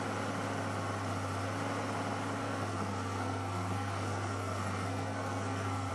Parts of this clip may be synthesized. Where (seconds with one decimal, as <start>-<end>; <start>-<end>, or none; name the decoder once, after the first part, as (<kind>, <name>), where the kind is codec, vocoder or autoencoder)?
2.4-5.9 (codec, SNAC)